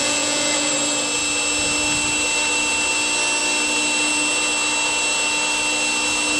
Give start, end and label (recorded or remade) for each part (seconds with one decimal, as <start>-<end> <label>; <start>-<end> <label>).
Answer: 0.0-0.7 remade; 0.7-6.4 recorded